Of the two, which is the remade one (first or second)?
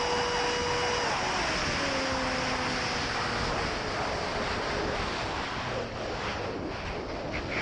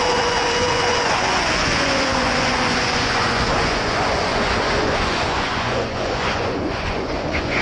second